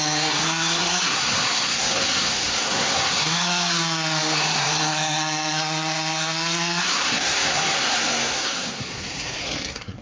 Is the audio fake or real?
fake